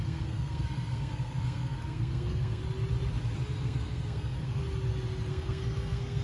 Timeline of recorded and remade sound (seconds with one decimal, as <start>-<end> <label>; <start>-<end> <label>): 0.0-2.6 remade; 2.6-3.6 recorded; 3.6-4.6 remade; 4.6-5.3 recorded; 5.3-6.2 remade